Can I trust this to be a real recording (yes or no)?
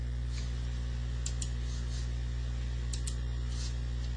yes